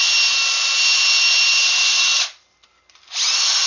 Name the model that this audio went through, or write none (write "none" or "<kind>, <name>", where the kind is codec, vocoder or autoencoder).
none